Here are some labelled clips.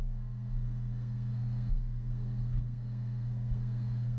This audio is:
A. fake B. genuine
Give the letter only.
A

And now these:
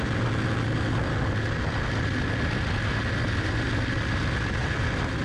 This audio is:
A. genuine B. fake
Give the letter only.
A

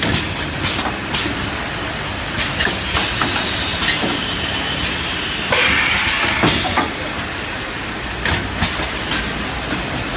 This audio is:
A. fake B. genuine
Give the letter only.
B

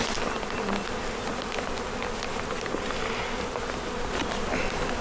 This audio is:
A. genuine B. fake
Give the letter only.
A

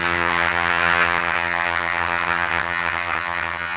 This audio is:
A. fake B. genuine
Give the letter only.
A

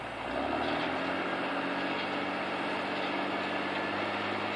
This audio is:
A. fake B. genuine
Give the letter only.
B